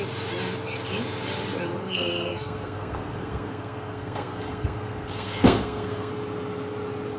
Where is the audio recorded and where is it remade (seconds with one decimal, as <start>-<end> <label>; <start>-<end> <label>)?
0.0-1.8 recorded; 1.8-6.1 remade; 6.1-7.2 recorded